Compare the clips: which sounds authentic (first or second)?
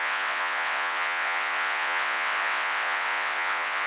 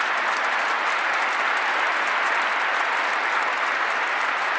second